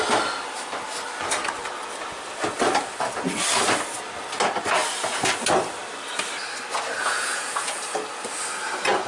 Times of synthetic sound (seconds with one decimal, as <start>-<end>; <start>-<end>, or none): 7.0-7.8